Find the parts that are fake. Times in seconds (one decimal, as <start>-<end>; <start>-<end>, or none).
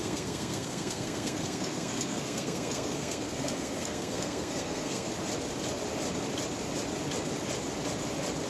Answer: 0.0-5.1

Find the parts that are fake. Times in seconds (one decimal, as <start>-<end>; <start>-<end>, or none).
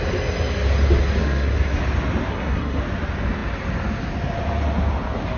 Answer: 1.2-1.8; 2.3-2.8